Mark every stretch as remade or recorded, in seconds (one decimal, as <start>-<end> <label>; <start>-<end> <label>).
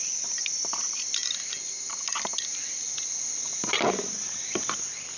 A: 0.0-5.2 recorded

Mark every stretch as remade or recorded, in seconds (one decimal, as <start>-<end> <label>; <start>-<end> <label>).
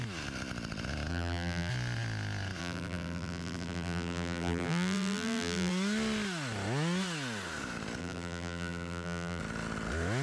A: 0.0-1.1 recorded; 1.1-1.7 remade; 1.7-2.6 recorded; 2.6-5.7 remade; 5.7-8.0 recorded; 8.0-9.4 remade; 9.4-10.2 recorded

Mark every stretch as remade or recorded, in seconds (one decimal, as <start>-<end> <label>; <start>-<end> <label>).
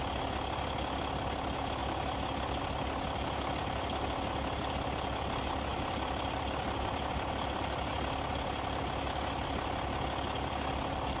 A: 0.0-5.7 recorded; 5.7-7.3 remade; 7.3-11.2 recorded